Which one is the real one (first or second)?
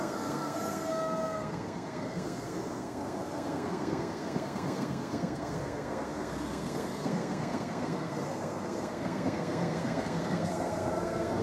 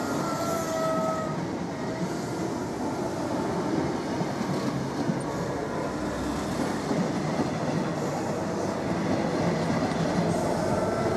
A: second